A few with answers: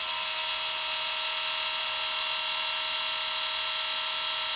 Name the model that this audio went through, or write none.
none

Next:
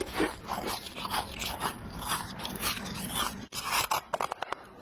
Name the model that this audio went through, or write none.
none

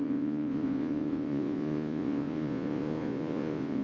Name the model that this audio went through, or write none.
vocoder, Vocos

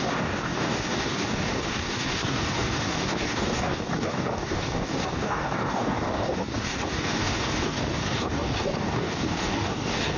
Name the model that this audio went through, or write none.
codec, DAC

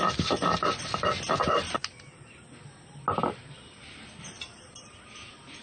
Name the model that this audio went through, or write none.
none